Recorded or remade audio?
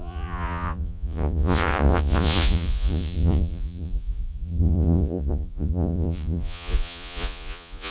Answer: remade